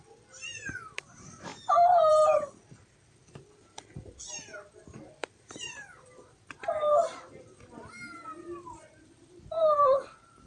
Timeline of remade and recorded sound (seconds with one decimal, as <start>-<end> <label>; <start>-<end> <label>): 0.0-5.2 recorded; 5.2-10.1 remade; 10.1-10.5 recorded